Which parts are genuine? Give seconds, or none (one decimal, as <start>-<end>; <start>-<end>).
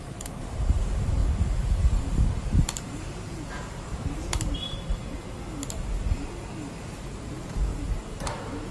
1.2-2.2; 4.9-6.8